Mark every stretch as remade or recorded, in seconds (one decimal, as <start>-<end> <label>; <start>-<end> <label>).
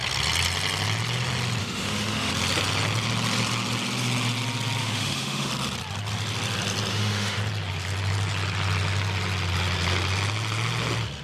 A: 0.0-1.6 recorded; 1.6-2.3 remade; 2.3-4.8 recorded; 4.8-5.5 remade; 5.5-6.9 recorded; 6.9-7.4 remade; 7.4-11.2 recorded